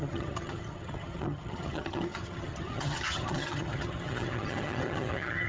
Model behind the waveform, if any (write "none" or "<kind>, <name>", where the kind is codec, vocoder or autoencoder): vocoder, HiFi-GAN